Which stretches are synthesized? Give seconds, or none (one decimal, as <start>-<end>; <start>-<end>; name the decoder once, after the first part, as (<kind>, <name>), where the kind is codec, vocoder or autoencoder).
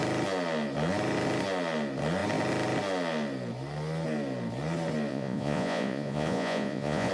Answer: 5.1-7.1 (vocoder, Vocos)